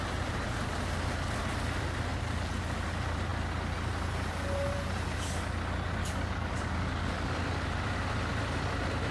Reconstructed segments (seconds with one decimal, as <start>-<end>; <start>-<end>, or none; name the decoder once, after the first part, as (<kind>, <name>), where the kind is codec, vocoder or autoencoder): 6.0-7.3 (codec, DAC)